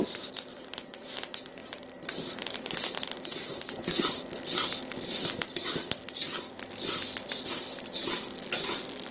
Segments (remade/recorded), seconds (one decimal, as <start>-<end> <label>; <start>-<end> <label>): 0.0-1.6 recorded; 1.6-4.6 remade; 4.6-9.1 recorded